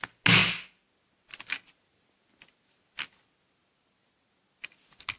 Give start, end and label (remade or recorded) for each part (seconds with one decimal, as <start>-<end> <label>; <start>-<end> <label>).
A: 0.0-5.2 recorded